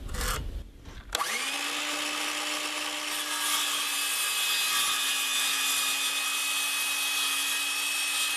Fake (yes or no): no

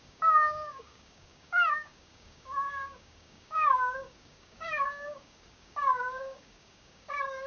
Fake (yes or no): yes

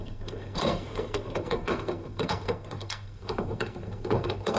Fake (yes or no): yes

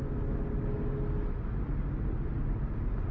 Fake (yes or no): no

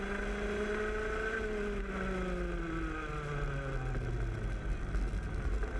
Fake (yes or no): no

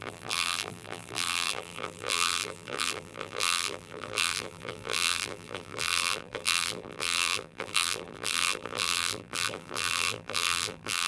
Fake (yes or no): yes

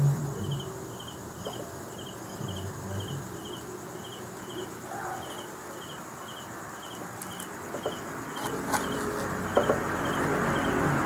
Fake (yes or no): no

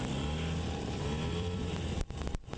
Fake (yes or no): yes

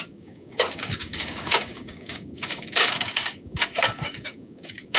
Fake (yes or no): yes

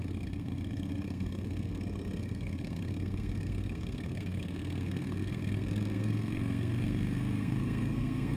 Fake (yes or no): yes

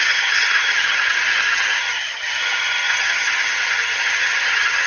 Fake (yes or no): yes